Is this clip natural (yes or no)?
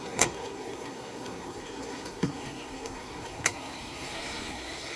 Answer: no